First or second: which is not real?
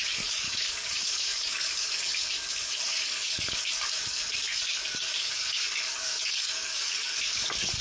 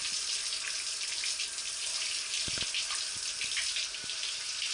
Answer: first